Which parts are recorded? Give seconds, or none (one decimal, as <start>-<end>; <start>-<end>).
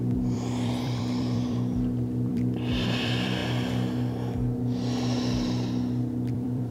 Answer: 3.4-6.3